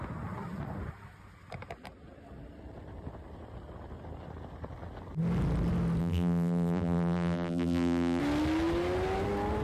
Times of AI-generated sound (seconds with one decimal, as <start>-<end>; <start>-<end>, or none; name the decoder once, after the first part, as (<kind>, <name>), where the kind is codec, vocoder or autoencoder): 6.0-8.2 (vocoder, BigVGAN v2)